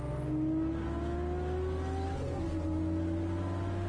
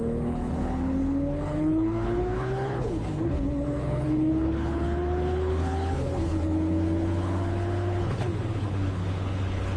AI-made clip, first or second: second